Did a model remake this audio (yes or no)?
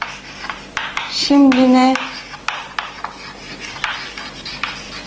no